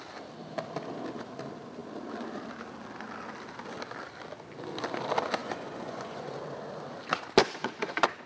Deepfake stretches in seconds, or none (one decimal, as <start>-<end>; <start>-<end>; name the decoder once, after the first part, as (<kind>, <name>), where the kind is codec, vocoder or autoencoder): 5.4-6.4 (vocoder, Vocos); 7.4-8.3